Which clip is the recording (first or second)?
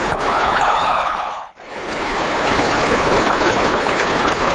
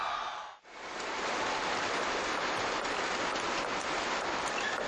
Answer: second